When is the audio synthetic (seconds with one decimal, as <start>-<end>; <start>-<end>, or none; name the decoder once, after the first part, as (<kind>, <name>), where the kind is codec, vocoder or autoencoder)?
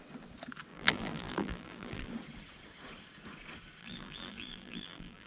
0.7-2.1 (vocoder, BigVGAN v2); 3.8-5.3